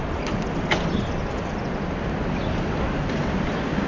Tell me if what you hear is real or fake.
real